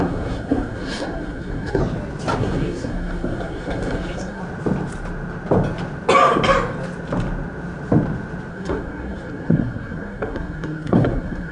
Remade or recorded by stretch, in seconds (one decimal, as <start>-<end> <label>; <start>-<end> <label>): 0.0-1.8 remade; 1.8-2.4 recorded; 2.4-4.4 remade; 4.4-8.5 recorded; 8.5-11.5 remade